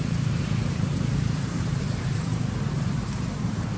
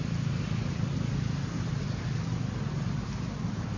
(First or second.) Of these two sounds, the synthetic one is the first